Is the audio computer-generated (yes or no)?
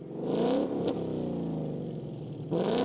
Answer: no